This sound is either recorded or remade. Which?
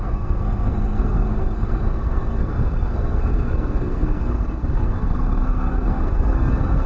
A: remade